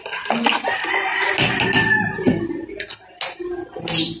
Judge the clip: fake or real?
real